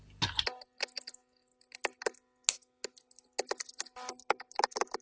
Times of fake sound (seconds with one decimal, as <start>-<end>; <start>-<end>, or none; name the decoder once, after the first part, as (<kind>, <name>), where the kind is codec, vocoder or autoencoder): none